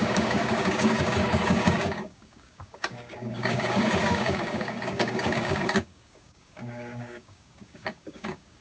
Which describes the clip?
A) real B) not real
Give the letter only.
B